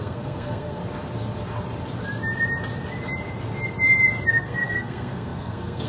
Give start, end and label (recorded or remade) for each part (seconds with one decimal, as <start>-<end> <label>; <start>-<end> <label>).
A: 0.0-0.8 remade; 0.8-4.3 recorded; 4.3-5.9 remade